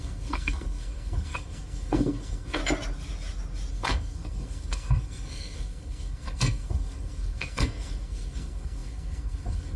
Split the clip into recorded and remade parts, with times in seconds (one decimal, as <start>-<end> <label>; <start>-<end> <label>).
0.0-2.6 remade; 2.6-3.7 recorded; 3.7-9.8 remade